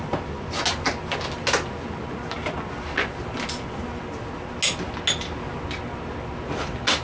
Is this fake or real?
real